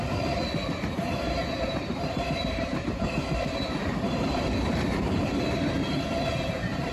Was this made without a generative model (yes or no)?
no